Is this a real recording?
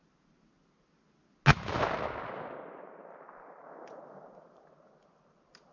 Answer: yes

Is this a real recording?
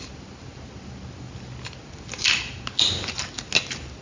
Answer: yes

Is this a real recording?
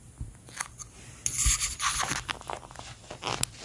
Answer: yes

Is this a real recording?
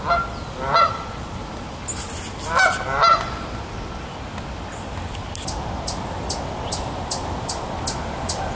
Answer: yes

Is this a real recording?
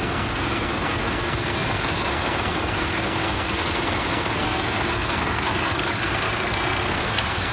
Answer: no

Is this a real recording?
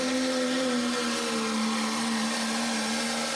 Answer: yes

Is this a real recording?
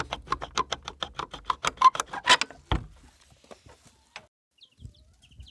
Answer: yes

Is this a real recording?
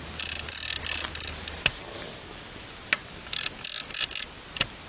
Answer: yes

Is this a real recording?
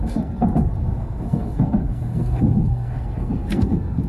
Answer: no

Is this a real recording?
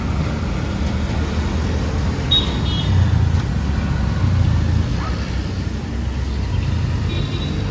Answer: yes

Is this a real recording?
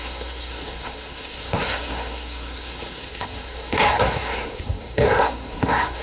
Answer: no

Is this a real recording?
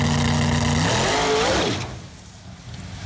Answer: yes